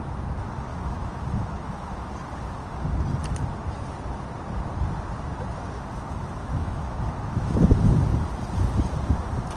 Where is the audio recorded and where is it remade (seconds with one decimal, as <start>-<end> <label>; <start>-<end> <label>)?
0.0-0.7 recorded; 0.7-2.1 remade; 2.1-6.2 recorded; 6.2-7.6 remade; 7.6-9.6 recorded